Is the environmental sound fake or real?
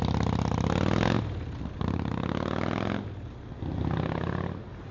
real